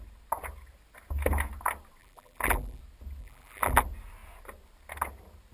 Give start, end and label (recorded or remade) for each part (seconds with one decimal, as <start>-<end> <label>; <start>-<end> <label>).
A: 0.0-2.0 recorded; 2.0-2.8 remade; 2.8-3.2 recorded; 3.2-3.8 remade; 3.8-5.5 recorded